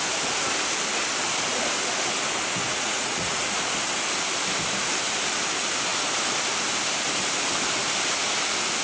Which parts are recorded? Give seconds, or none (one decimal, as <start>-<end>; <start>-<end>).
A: 0.0-2.7; 3.4-8.8